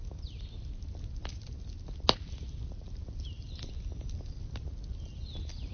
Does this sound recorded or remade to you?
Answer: recorded